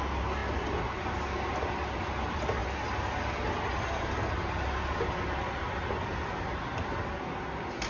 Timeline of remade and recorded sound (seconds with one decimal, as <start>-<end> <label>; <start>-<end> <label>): 0.0-7.9 recorded